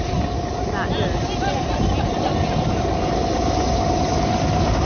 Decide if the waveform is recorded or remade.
recorded